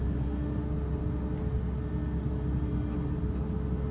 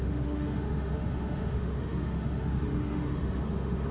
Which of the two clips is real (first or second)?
first